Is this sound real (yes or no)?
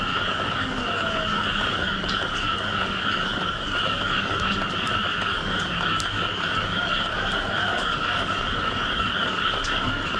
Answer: no